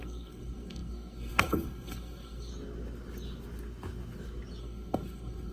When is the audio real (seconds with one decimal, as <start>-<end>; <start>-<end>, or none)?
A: 2.5-4.6